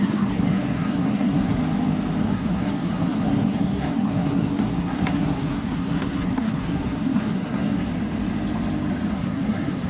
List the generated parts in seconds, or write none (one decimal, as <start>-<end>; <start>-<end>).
0.0-1.6; 2.2-7.9; 9.1-9.9